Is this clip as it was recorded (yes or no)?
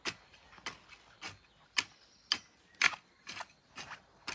yes